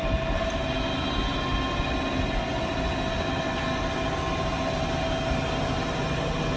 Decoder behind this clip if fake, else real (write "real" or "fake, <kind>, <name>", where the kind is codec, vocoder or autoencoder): real